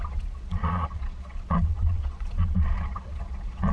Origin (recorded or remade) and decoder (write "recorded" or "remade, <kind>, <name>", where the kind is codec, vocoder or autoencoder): remade, vocoder, Vocos